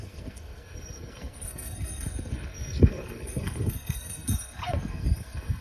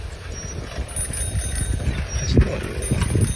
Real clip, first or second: second